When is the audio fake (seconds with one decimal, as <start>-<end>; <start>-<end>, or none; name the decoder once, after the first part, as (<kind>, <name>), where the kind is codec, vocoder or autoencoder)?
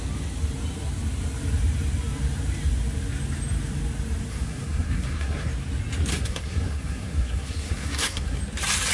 4.3-5.5 (codec, SNAC); 6.1-8.4